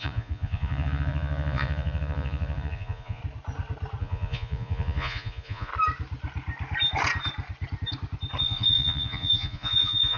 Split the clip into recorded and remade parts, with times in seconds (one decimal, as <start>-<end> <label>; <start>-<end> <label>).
0.0-3.2 remade; 3.2-4.0 recorded; 4.0-5.7 remade; 5.7-8.4 recorded; 8.4-10.2 remade